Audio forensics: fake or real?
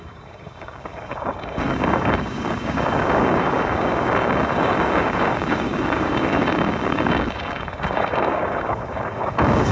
fake